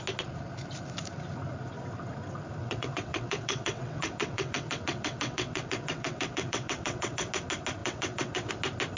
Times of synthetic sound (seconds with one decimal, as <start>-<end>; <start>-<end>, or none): 2.6-7.3; 7.8-8.5